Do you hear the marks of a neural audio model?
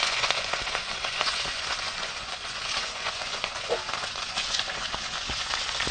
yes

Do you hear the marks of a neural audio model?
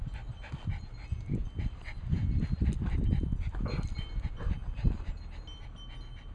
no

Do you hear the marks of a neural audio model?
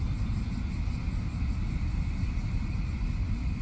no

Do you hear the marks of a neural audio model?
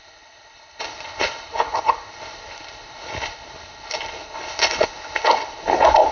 yes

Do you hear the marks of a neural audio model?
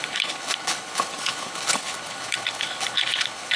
yes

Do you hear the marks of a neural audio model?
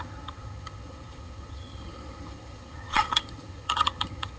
yes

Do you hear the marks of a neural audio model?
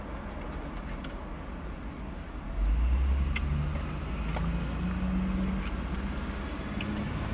no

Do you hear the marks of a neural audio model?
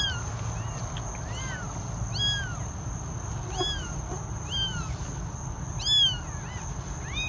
no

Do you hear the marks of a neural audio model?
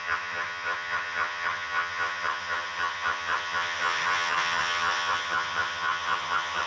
yes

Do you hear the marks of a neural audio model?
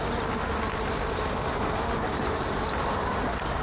no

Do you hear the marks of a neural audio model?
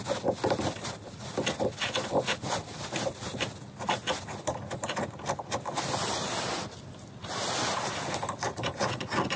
no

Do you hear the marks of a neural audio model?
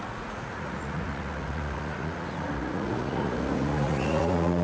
yes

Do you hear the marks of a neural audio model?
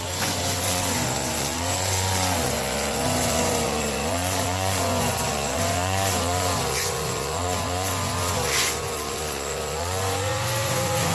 yes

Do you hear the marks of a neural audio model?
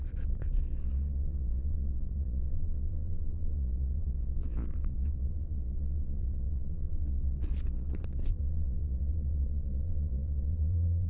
yes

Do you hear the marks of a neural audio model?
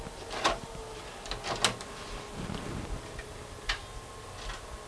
no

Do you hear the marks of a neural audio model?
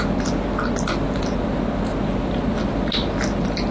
no